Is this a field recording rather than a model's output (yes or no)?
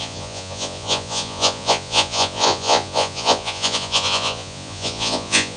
no